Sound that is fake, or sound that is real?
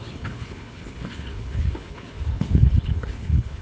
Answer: fake